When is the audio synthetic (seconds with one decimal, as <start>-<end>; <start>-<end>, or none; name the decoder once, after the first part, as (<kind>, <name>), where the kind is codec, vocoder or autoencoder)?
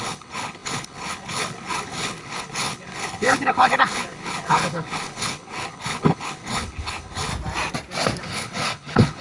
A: 0.0-7.3 (codec, HILCodec); 8.2-9.2